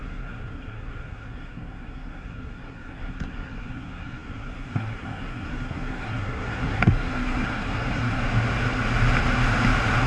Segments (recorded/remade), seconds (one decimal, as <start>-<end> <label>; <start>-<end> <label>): 0.0-8.2 remade; 8.2-10.1 recorded